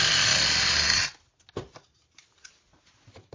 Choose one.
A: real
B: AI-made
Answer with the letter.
A